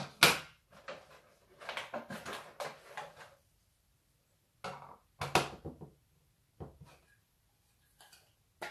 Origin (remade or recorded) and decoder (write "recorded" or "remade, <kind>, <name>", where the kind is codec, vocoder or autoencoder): recorded